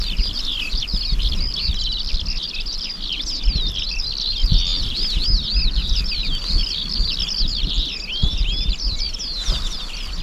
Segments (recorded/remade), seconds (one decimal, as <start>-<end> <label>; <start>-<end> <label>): 0.0-10.2 recorded

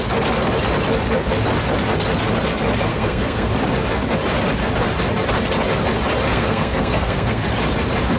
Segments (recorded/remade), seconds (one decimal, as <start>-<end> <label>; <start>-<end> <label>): 0.0-2.9 recorded; 2.9-3.5 remade; 3.5-6.3 recorded; 6.3-7.5 remade; 7.5-8.2 recorded